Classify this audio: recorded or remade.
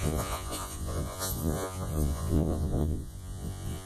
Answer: remade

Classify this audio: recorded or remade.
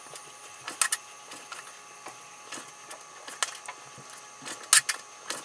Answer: recorded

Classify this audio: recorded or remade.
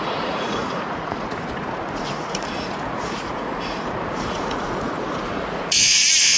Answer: remade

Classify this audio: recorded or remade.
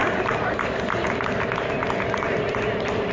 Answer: recorded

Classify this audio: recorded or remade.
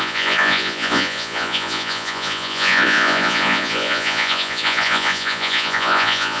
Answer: remade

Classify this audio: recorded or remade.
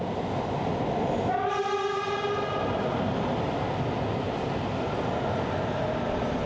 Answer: recorded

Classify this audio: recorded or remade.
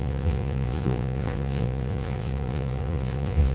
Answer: remade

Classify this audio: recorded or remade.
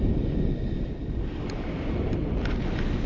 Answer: recorded